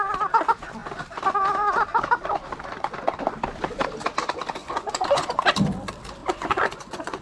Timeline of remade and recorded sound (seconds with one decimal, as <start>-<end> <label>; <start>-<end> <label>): 0.0-4.6 recorded; 4.6-5.4 remade; 5.4-6.2 recorded; 6.2-7.2 remade